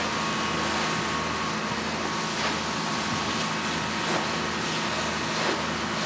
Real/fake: real